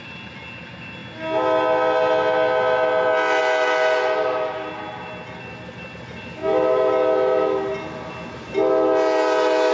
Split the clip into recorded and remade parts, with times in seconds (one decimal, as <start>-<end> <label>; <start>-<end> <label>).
0.0-9.7 recorded

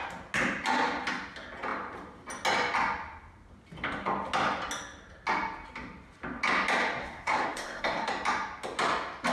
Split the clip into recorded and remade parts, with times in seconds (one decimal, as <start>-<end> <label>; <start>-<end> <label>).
0.0-7.0 recorded; 7.0-8.1 remade; 8.1-9.3 recorded

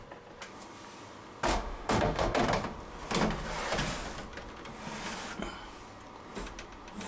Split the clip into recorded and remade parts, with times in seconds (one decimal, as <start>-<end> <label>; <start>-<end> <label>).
0.0-1.5 recorded; 1.5-2.4 remade; 2.4-7.1 recorded

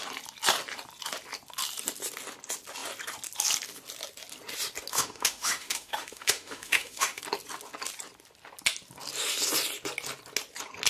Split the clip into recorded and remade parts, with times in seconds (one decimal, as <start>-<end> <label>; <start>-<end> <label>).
0.0-4.9 recorded; 4.9-7.2 remade; 7.2-10.9 recorded

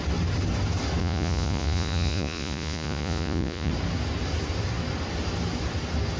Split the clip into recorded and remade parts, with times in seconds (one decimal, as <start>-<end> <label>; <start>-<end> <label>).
0.0-1.0 recorded; 1.0-3.7 remade; 3.7-6.2 recorded

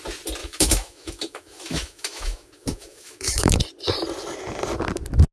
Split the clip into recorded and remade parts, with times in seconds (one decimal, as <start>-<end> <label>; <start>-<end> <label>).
0.0-0.4 recorded; 0.4-3.6 remade; 3.6-5.3 recorded

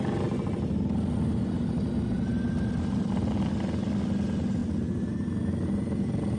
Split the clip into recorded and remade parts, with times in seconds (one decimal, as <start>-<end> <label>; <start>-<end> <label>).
0.0-6.4 recorded